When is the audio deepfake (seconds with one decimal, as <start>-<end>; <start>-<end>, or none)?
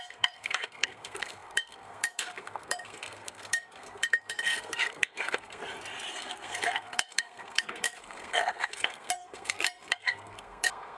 0.0-5.6; 6.1-11.0